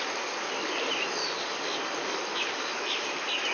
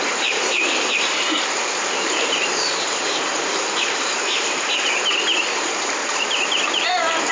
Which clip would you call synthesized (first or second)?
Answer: second